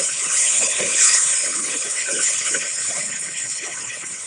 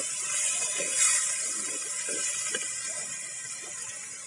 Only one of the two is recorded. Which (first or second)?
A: second